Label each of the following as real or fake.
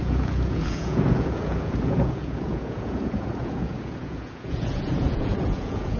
fake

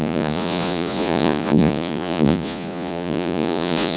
fake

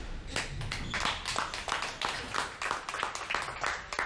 real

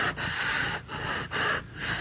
real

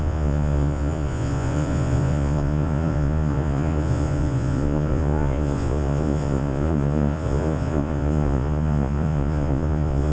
fake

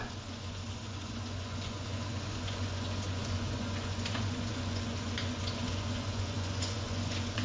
fake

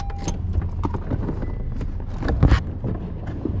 real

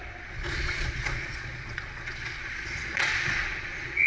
fake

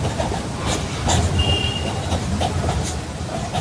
real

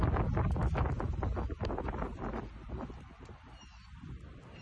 real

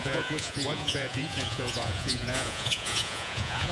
fake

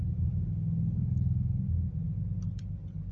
real